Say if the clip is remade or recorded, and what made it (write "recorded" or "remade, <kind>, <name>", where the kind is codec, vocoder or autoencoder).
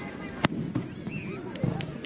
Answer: recorded